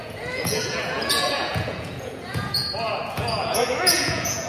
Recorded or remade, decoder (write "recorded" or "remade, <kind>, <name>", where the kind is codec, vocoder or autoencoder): remade, vocoder, Vocos